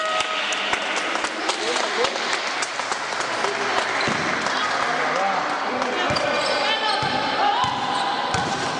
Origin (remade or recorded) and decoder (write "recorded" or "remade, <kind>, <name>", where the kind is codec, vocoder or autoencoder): recorded